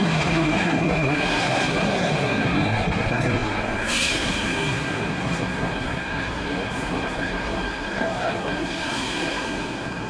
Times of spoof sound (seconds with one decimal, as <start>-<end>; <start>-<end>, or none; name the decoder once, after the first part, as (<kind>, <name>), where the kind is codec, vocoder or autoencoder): 0.0-10.1 (codec, SNAC)